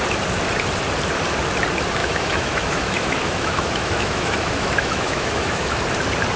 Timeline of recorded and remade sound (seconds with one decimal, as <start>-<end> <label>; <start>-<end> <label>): 0.0-2.0 recorded; 2.0-5.8 remade; 5.8-6.4 recorded